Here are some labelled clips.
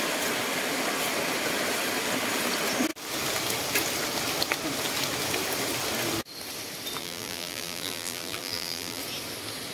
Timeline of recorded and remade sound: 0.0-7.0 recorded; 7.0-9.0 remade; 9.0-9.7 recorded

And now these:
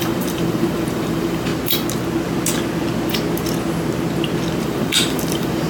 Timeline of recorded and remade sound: 0.0-1.5 remade; 1.5-4.6 recorded; 4.6-5.7 remade

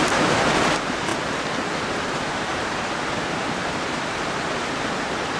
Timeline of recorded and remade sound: 0.0-5.4 recorded